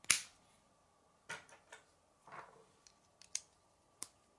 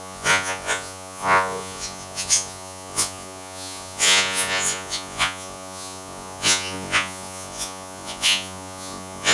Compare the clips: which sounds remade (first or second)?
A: second